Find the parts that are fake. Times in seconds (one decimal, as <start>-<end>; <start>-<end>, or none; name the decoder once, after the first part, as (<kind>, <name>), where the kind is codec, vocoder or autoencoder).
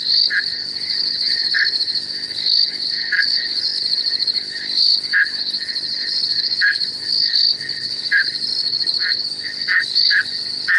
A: 0.0-10.8 (codec, HILCodec)